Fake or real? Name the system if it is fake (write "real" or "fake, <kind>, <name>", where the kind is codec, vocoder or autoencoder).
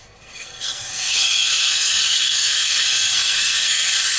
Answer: fake, codec, SNAC